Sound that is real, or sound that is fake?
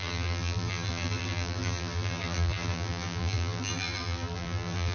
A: fake